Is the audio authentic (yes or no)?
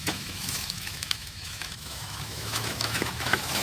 no